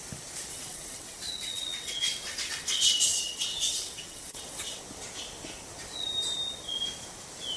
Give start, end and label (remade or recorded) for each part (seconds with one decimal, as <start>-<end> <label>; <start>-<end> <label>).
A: 0.0-0.5 recorded; 0.5-4.8 remade; 4.8-7.6 recorded